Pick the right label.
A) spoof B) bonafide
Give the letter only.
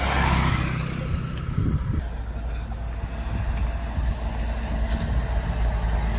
B